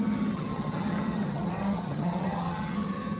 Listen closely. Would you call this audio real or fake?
fake